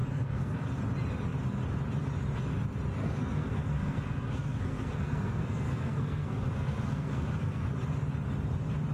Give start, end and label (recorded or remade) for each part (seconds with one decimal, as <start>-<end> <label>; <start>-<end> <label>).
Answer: 0.0-0.6 remade; 0.6-3.0 recorded; 3.0-7.7 remade; 7.7-8.9 recorded